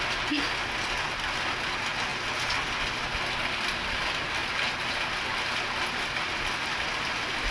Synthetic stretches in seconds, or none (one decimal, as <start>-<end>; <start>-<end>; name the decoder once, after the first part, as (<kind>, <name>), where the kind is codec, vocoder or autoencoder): none